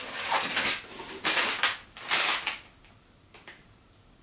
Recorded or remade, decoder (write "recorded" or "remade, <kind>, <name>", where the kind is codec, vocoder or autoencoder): recorded